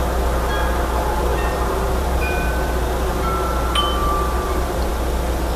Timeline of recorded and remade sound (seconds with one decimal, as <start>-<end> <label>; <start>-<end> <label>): 0.0-1.3 recorded; 1.3-2.5 remade; 2.5-4.0 recorded; 4.0-4.9 remade; 4.9-5.6 recorded